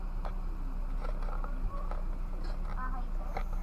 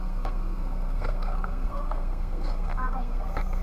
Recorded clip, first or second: first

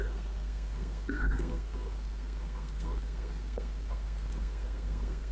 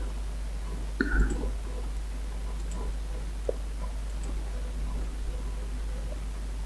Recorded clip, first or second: second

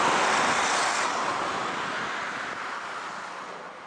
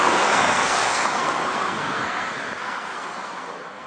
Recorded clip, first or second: first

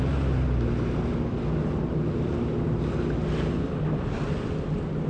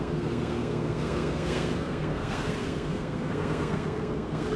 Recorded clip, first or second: first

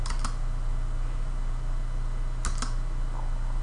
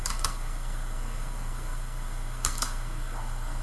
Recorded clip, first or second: first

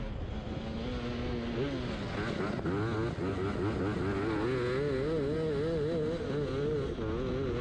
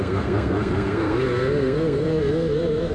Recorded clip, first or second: first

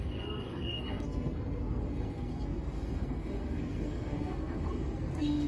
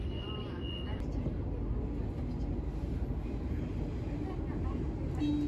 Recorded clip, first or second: second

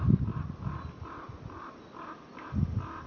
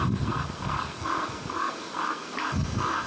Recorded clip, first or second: first